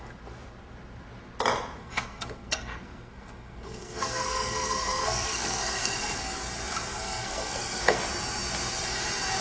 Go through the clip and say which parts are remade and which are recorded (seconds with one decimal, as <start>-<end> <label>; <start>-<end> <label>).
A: 0.0-1.8 recorded; 1.8-6.2 remade; 6.2-6.9 recorded; 6.9-8.0 remade; 8.0-9.4 recorded